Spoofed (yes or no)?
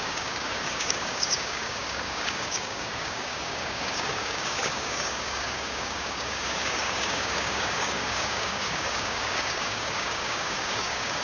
yes